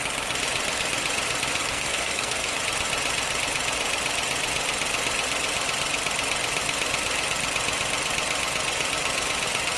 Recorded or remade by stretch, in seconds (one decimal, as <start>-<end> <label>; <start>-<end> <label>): 0.0-1.6 recorded; 1.6-2.6 remade; 2.6-9.8 recorded